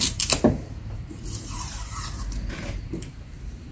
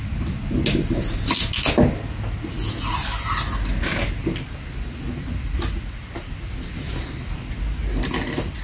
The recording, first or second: second